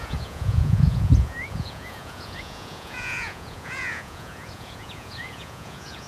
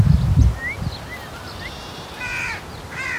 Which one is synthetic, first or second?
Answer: first